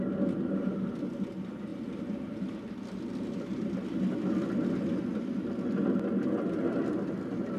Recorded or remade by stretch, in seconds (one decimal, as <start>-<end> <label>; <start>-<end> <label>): 0.0-7.6 recorded

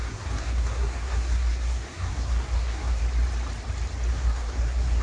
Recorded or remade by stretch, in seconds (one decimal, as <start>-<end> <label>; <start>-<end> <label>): 0.0-3.0 remade; 3.0-4.1 recorded; 4.1-5.0 remade

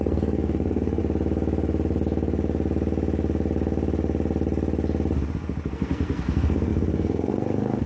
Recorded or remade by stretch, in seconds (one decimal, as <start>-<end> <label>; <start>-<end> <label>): 0.0-1.0 remade; 1.0-5.7 recorded; 5.7-7.9 remade

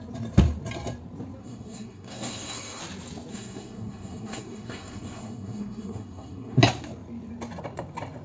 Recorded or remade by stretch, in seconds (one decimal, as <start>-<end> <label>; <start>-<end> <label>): 0.0-1.4 recorded; 1.4-2.8 remade; 2.8-3.3 recorded; 3.3-6.6 remade; 6.6-8.2 recorded